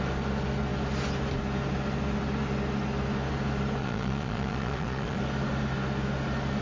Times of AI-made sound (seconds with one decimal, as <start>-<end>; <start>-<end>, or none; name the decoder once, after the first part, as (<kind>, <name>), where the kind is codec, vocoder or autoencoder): 3.8-5.2 (vocoder, Vocos)